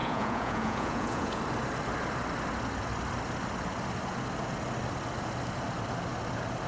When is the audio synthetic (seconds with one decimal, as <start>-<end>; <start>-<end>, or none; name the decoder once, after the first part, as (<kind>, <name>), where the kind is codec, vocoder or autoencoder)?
0.0-1.4 (vocoder, Vocos)